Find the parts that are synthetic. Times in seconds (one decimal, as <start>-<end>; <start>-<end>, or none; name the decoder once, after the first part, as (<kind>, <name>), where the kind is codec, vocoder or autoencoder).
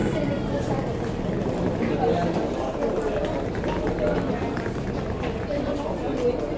none